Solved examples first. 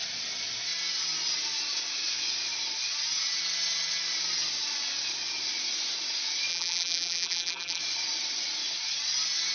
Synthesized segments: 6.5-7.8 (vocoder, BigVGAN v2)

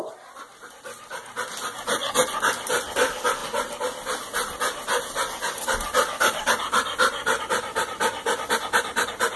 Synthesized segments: none

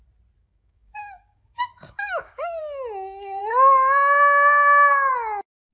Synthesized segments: 0.4-2.6 (codec, DAC)

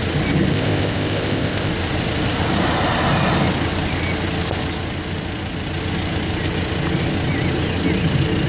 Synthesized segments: 0.5-1.7 (codec, ZipCodec)

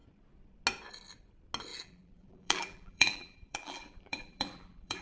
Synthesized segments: 1.7-5.0 (vocoder, BigVGAN v2)

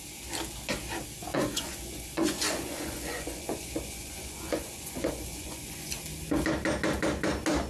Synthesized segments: 1.3-5.9 (vocoder, Vocos)

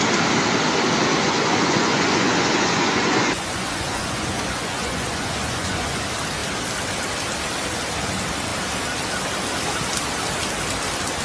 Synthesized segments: 1.1-6.0 (vocoder, Vocos)

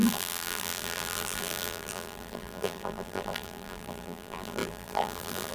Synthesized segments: 0.0-5.5 (vocoder, BigVGAN v2)